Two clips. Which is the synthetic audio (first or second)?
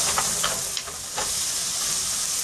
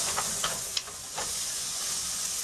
second